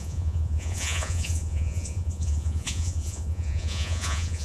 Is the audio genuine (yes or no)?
no